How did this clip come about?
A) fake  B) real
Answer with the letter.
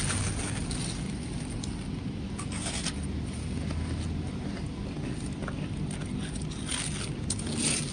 B